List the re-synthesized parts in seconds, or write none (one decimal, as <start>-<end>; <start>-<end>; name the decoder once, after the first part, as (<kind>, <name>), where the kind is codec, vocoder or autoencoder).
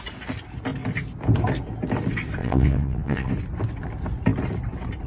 2.4-3.3 (vocoder, WaveNeXt)